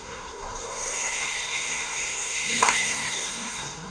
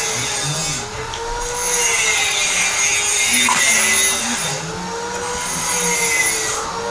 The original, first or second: second